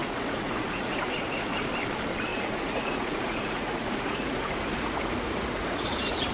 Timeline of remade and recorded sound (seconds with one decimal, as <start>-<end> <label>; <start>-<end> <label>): 0.0-1.7 remade; 1.7-2.3 recorded; 2.3-6.3 remade